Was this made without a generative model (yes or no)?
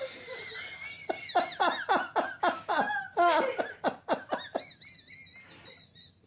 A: yes